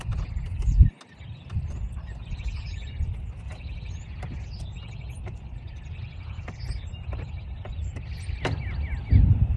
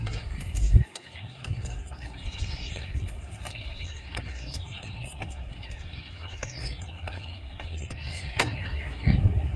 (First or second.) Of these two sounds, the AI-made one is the second